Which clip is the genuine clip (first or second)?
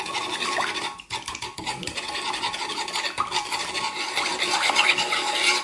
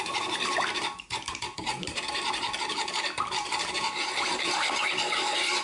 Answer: first